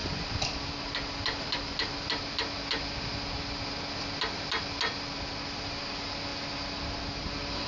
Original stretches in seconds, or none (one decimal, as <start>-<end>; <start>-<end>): 0.0-7.7